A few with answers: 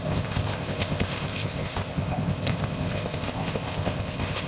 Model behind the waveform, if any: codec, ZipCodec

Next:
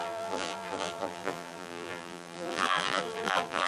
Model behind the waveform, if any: vocoder, BigVGAN v2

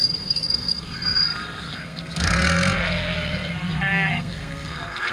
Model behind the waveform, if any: codec, SNAC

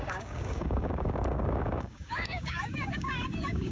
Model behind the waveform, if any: codec, DAC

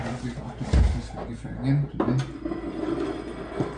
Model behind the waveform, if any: none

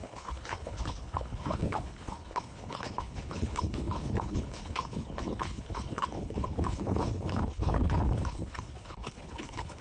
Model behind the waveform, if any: codec, HILCodec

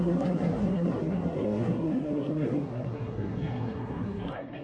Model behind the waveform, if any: codec, SNAC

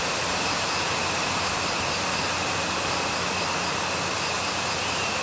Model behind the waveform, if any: none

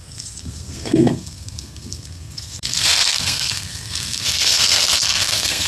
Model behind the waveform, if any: codec, SNAC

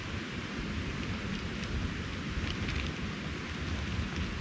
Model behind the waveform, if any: none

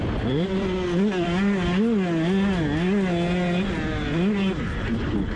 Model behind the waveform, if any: none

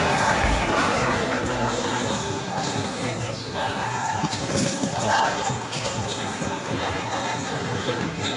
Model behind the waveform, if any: codec, SNAC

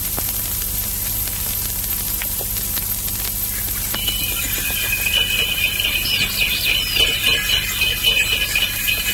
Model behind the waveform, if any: vocoder, BigVGAN v2